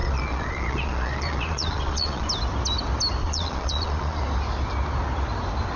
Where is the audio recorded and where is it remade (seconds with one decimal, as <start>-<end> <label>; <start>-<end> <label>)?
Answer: 0.0-2.3 remade; 2.3-3.2 recorded; 3.2-4.2 remade; 4.2-5.8 recorded